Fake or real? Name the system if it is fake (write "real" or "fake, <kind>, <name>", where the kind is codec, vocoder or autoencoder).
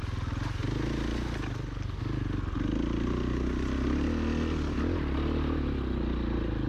real